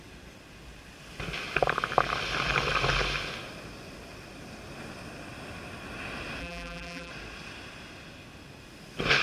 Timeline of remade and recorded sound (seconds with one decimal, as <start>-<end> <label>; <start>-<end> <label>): 0.0-6.4 recorded; 6.4-7.1 remade; 7.1-9.2 recorded